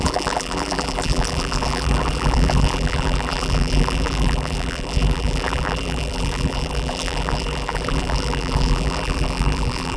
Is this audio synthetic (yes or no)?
yes